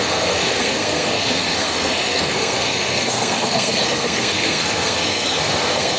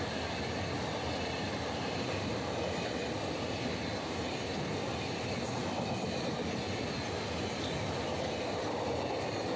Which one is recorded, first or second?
second